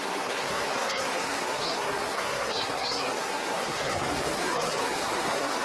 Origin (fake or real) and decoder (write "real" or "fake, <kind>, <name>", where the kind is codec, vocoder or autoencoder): fake, codec, SNAC